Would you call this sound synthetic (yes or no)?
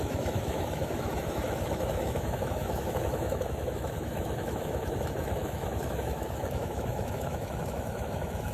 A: yes